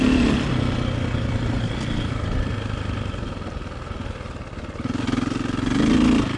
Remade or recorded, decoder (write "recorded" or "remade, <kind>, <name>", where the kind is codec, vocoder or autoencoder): recorded